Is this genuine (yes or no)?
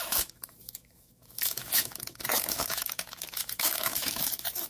no